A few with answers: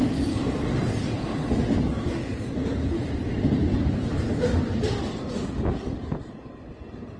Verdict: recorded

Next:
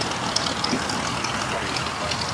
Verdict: recorded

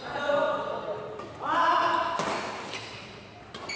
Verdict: recorded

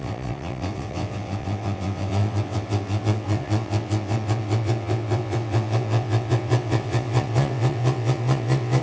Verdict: remade